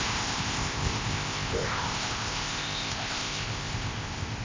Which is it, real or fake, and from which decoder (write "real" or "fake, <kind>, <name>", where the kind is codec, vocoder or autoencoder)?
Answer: fake, codec, ZipCodec